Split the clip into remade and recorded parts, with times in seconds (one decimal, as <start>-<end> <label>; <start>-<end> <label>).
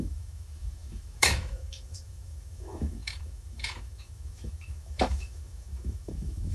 0.0-6.5 remade